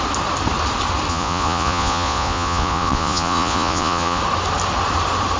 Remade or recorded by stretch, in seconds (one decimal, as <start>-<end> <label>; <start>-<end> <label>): 0.0-1.1 recorded; 1.1-4.2 remade; 4.2-5.4 recorded